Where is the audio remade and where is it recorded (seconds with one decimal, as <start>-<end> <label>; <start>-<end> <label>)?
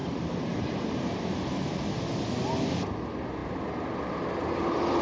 0.0-1.3 remade; 1.3-5.0 recorded